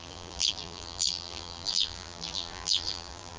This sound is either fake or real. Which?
fake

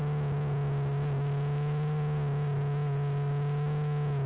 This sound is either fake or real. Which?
real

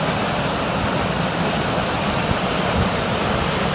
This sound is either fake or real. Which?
real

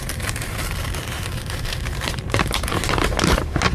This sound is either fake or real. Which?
fake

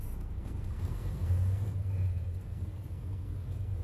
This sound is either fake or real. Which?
fake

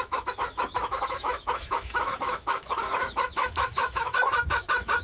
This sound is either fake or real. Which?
fake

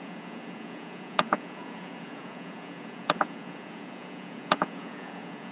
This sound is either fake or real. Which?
fake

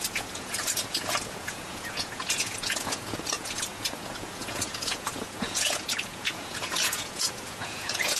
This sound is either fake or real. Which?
fake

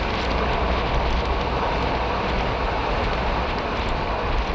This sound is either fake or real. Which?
real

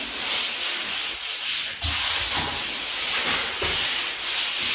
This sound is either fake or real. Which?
real